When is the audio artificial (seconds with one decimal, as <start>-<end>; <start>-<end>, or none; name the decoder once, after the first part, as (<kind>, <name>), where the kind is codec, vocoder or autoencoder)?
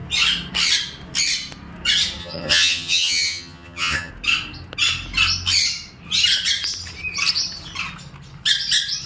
2.2-4.1 (vocoder, HiFi-GAN)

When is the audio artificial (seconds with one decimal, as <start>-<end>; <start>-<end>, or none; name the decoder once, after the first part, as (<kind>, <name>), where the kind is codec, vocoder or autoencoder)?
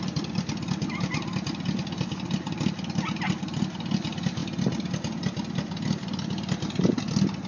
none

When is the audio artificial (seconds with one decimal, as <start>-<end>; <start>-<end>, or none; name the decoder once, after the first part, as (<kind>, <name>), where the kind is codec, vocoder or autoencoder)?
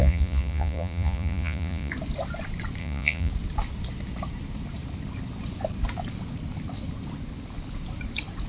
0.0-1.9 (vocoder, Vocos); 2.8-3.3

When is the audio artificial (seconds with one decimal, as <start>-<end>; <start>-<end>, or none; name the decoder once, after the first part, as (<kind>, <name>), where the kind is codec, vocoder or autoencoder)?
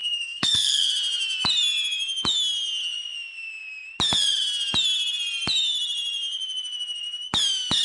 0.0-0.9 (codec, SNAC)